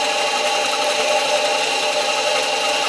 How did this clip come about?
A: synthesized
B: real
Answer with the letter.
B